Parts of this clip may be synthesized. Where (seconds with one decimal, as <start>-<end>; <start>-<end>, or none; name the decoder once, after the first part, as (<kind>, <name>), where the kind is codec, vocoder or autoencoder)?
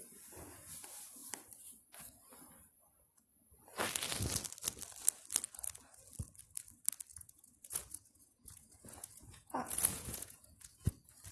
7.1-10.9 (vocoder, Vocos)